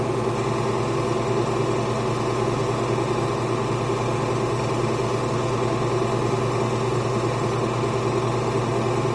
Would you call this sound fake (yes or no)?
no